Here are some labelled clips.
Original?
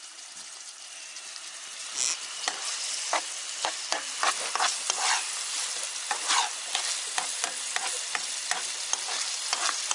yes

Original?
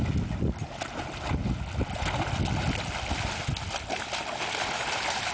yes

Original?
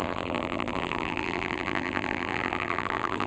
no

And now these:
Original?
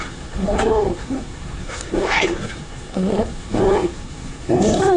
no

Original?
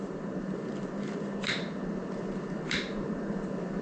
no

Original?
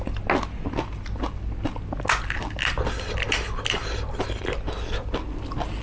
yes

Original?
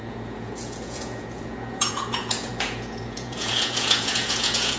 no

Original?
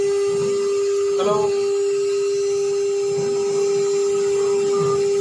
yes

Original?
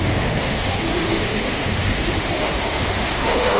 no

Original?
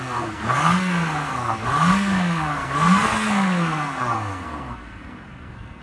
no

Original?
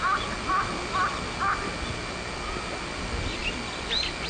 yes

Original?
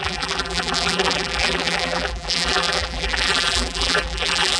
no